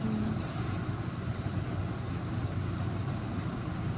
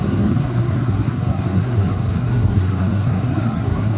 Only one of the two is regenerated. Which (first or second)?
second